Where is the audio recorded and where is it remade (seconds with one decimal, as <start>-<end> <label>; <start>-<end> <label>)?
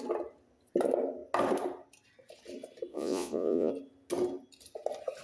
0.0-2.9 recorded; 2.9-3.7 remade; 3.7-5.2 recorded